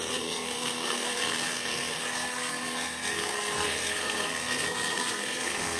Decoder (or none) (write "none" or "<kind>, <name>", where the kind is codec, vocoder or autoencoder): codec, SNAC